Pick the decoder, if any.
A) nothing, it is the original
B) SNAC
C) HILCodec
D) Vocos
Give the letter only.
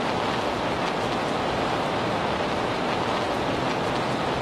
A